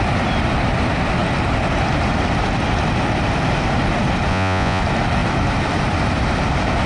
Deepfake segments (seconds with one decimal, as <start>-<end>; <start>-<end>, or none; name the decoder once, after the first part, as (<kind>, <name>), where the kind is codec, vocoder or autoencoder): 4.3-4.8 (vocoder, Vocos)